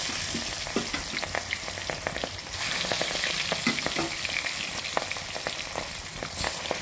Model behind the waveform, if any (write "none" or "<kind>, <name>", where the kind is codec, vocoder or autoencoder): none